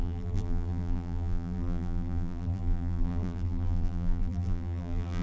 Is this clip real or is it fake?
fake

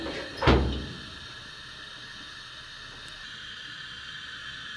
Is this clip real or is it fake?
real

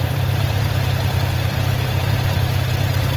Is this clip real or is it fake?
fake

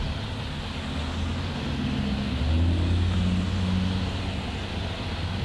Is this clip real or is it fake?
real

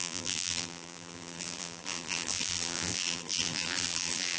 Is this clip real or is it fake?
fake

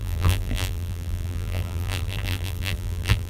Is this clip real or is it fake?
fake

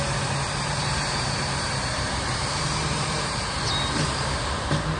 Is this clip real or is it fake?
fake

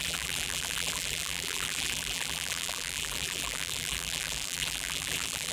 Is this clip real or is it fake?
fake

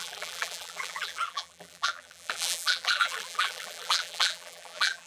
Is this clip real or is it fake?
fake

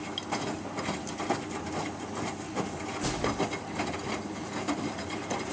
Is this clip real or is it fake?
real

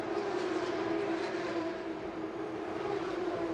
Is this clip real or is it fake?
real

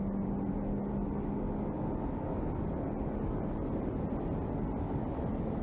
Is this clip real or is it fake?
real